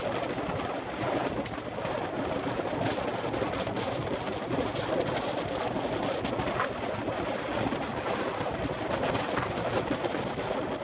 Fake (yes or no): no